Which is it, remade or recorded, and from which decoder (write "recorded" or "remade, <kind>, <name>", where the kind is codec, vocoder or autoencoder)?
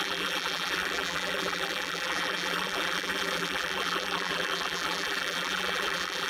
remade, vocoder, BigVGAN v2